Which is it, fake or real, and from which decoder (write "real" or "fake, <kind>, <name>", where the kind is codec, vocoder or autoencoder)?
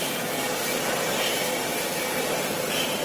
real